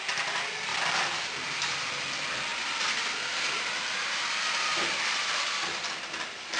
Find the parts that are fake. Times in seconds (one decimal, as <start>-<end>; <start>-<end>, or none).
0.7-1.9; 2.5-6.6